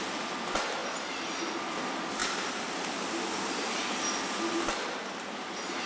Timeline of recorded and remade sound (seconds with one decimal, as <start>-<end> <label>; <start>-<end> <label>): 0.0-5.9 recorded